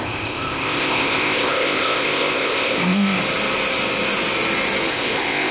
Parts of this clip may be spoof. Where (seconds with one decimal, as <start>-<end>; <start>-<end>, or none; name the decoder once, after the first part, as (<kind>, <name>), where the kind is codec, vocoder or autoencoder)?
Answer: 0.0-3.2 (codec, ZipCodec); 4.9-5.5